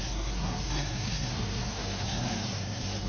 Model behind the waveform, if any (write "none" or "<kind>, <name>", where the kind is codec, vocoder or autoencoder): codec, SNAC